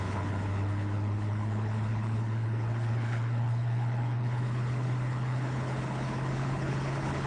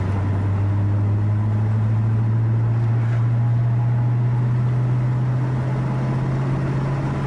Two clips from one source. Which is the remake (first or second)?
first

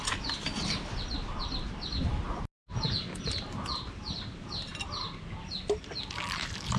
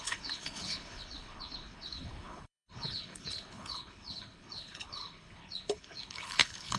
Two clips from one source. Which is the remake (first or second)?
second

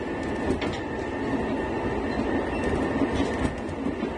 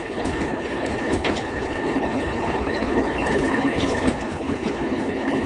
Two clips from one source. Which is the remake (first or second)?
second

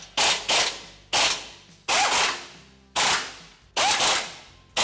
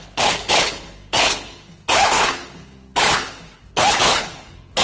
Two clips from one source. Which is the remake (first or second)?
second